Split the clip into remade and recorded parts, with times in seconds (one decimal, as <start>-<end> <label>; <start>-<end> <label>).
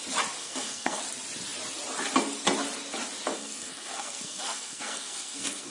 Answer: 0.0-0.4 recorded; 0.4-1.0 remade; 1.0-3.3 recorded; 3.3-5.7 remade